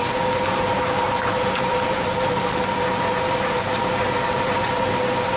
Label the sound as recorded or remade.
recorded